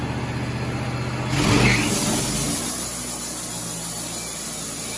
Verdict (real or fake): real